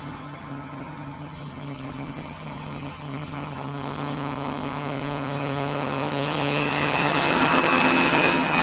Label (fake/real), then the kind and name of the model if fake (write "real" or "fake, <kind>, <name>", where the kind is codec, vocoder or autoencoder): fake, vocoder, HiFi-GAN